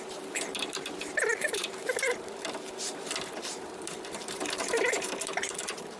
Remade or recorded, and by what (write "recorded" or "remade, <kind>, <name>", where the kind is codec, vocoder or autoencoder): remade, vocoder, BigVGAN v2